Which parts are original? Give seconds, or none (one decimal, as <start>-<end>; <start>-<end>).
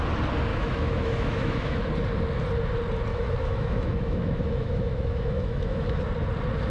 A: 0.0-0.5; 1.8-3.1; 6.0-6.7